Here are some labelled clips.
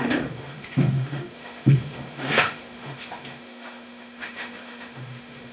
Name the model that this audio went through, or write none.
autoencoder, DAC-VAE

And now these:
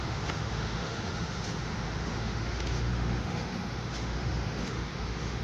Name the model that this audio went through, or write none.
autoencoder, DAC-VAE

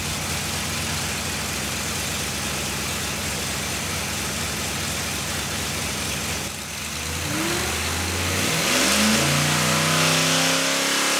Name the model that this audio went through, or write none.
none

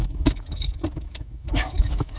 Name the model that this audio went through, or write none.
autoencoder, DAC-VAE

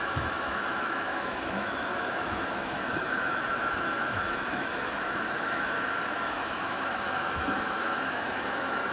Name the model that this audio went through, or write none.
autoencoder, DAC-VAE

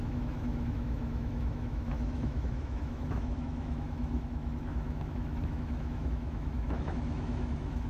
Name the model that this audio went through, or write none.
autoencoder, DAC-VAE